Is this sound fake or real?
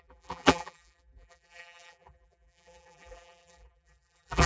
fake